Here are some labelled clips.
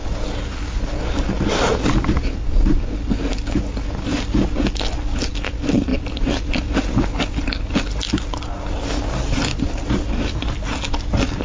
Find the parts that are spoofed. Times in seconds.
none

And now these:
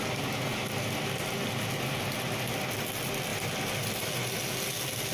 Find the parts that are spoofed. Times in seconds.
none

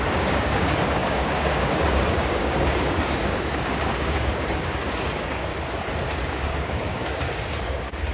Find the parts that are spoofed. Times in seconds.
0.0-5.5 (codec, DAC); 6.0-8.1

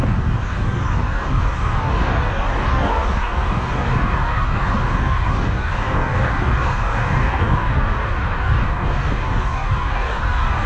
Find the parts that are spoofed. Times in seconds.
0.0-10.7 (codec, DAC)

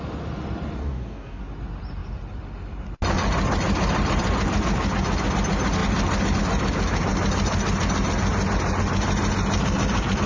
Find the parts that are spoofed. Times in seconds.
0.8-1.4 (codec, DAC)